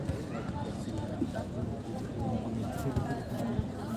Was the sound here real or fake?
real